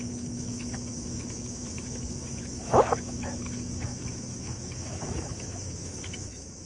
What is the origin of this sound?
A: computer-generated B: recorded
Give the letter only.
A